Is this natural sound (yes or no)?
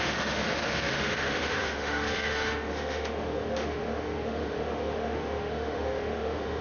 no